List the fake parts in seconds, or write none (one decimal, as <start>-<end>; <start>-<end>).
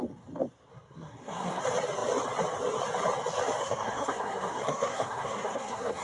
0.7-1.6; 3.6-6.0